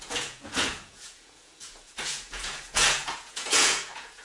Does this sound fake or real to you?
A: fake